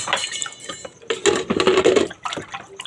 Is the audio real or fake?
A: real